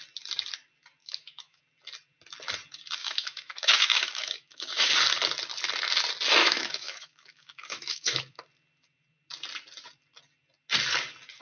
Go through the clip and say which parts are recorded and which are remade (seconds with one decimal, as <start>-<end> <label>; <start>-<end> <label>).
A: 0.0-1.0 recorded; 1.0-1.6 remade; 1.6-3.0 recorded; 3.0-4.9 remade; 4.9-6.4 recorded; 6.4-8.4 remade; 8.4-11.4 recorded